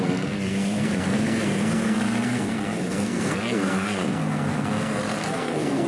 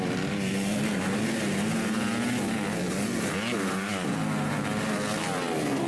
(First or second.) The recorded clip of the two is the second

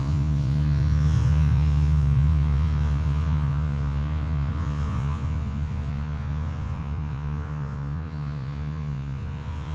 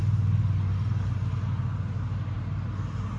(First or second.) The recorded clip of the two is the second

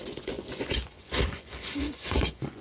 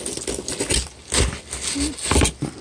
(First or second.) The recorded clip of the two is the second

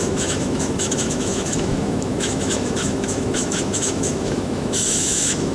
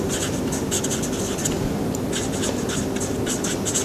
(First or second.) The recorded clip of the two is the second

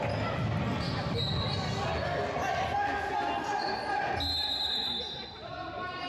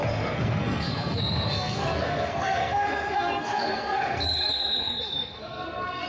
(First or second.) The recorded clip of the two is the first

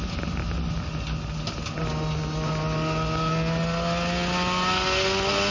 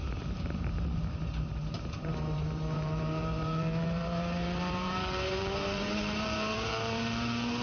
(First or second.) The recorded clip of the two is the first